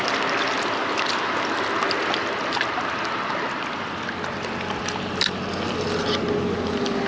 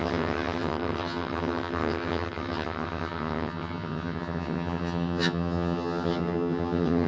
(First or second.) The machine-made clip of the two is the second